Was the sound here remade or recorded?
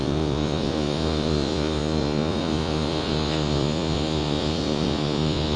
remade